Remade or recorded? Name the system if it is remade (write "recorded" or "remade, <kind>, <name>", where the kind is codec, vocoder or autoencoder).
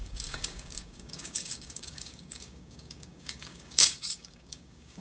remade, codec, DAC